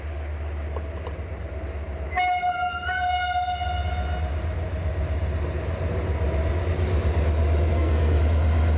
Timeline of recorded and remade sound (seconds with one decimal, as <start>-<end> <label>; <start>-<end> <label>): 0.0-7.7 recorded; 7.7-8.2 remade; 8.2-8.8 recorded